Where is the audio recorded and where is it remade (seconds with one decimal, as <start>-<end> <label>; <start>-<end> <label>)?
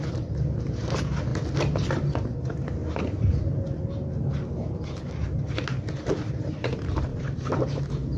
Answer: 0.0-1.3 remade; 1.3-2.0 recorded; 2.0-2.8 remade; 2.8-6.0 recorded; 6.0-8.2 remade